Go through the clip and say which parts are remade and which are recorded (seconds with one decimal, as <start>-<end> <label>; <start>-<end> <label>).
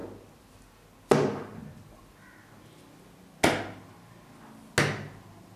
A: 0.0-5.6 recorded